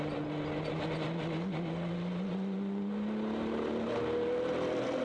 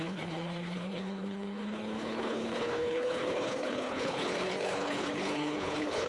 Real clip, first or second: first